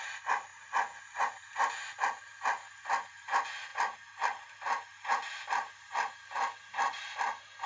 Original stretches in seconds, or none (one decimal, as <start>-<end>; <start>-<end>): 0.0-0.5; 1.5-7.7